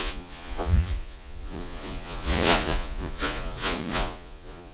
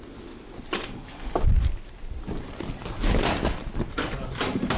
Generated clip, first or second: first